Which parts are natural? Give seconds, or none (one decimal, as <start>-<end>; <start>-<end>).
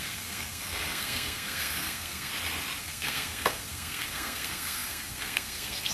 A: 2.3-2.8